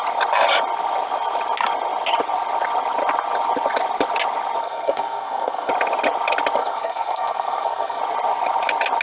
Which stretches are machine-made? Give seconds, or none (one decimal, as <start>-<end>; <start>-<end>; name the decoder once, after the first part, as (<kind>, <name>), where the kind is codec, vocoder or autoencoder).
4.6-5.7 (codec, SNAC); 6.6-8.0